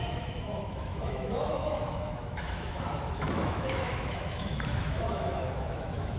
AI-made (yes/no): yes